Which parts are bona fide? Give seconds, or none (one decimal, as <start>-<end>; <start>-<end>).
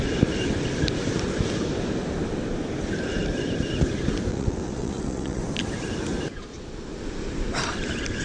0.0-4.3; 5.4-8.2